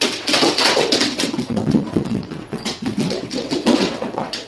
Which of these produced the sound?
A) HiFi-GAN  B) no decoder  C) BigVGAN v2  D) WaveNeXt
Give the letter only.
D